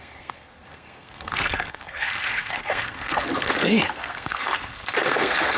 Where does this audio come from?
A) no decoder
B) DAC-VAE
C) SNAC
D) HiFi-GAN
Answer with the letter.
C